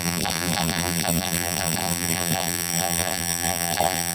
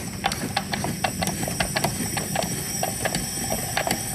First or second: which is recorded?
second